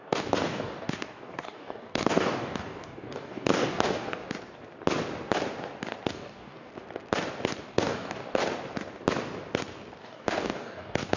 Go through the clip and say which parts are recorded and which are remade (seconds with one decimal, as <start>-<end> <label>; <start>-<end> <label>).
0.0-4.2 remade; 4.2-6.1 recorded; 6.1-6.7 remade; 6.7-7.6 recorded; 7.6-8.4 remade; 8.4-10.0 recorded; 10.0-11.2 remade